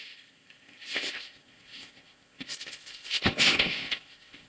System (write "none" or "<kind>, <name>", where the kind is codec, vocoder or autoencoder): codec, ZipCodec